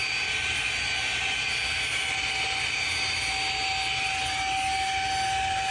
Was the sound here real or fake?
real